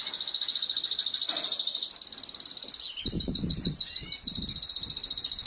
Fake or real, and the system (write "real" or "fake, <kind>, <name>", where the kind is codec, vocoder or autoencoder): real